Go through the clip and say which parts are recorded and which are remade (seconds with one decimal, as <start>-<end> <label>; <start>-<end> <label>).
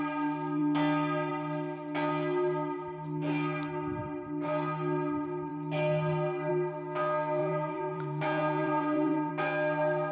0.0-7.4 recorded; 7.4-9.3 remade; 9.3-10.1 recorded